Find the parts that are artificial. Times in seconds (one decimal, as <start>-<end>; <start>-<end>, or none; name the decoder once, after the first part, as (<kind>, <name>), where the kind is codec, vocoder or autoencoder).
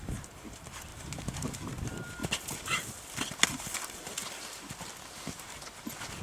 2.2-3.3 (vocoder, BigVGAN v2); 4.2-4.9